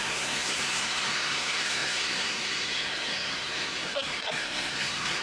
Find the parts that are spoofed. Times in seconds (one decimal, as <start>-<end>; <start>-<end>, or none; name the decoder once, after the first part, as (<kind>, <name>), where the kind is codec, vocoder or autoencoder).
0.0-5.2 (codec, SNAC)